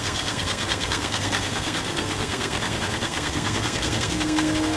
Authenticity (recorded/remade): remade